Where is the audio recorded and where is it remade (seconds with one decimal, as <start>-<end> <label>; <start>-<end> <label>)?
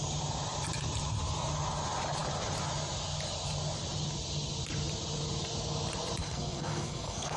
0.0-6.2 recorded; 6.2-7.4 remade